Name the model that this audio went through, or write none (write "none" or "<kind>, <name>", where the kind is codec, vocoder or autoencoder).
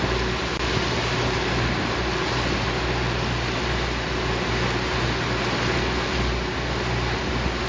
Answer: none